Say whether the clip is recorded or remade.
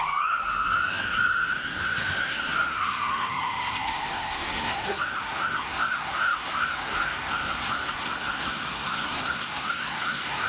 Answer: remade